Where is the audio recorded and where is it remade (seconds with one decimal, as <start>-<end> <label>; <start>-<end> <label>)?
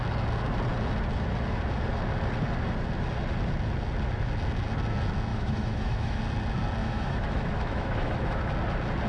0.0-5.3 recorded; 5.3-6.2 remade; 6.2-6.8 recorded; 6.8-8.5 remade; 8.5-9.1 recorded